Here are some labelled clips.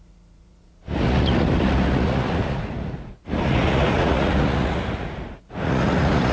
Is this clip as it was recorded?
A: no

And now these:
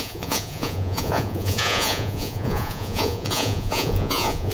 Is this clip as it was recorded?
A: no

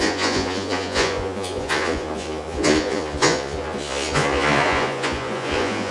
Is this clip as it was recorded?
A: no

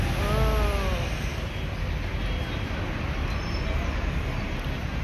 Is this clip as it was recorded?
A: yes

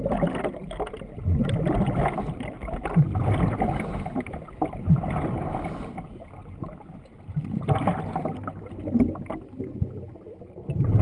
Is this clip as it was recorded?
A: yes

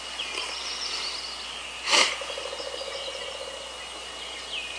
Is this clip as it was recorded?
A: yes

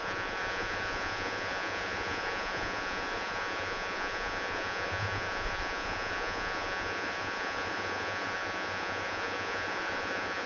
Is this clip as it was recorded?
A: no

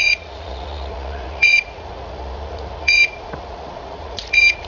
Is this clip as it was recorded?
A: no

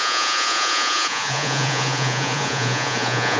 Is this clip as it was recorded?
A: no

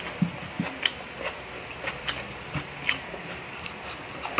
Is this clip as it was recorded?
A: yes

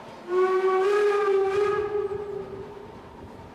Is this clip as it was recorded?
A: yes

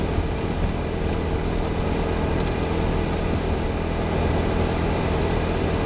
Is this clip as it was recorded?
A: yes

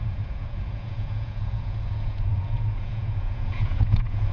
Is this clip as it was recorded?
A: no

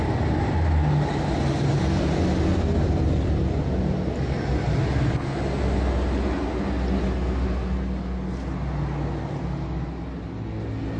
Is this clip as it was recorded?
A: yes